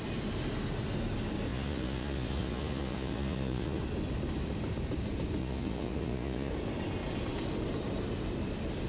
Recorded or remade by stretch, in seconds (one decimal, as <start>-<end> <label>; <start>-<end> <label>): 0.0-1.5 recorded; 1.5-3.8 remade; 3.8-5.4 recorded; 5.4-6.5 remade; 6.5-8.9 recorded